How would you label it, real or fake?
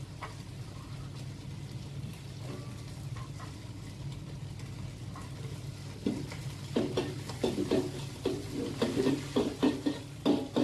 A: real